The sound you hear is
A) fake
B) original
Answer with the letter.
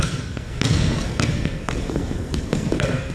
A